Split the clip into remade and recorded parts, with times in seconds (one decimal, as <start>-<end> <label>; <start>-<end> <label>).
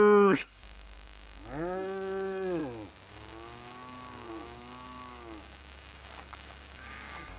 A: 0.0-2.6 remade; 2.6-3.1 recorded; 3.1-7.4 remade